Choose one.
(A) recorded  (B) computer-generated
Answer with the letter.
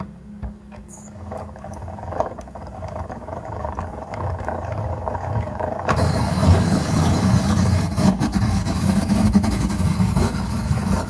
B